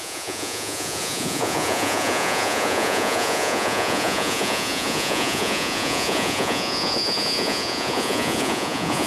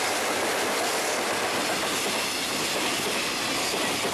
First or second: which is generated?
first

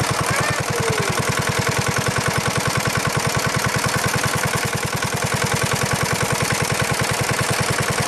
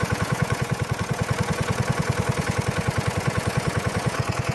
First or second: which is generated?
second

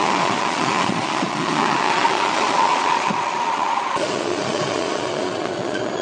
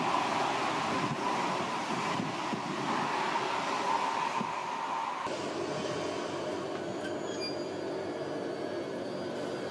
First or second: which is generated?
first